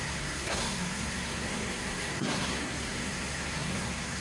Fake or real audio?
fake